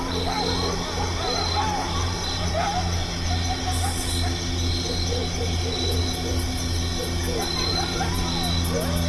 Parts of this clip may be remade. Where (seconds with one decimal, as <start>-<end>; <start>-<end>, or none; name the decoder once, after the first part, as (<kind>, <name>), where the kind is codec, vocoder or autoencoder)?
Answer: 1.8-2.5 (vocoder, BigVGAN v2); 7.7-8.2